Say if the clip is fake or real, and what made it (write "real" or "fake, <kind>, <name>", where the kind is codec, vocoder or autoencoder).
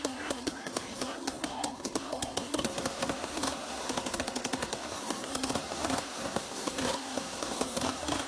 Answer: fake, codec, SNAC